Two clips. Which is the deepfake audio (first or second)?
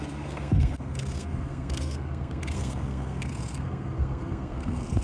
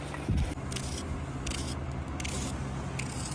first